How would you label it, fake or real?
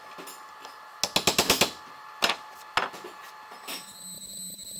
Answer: real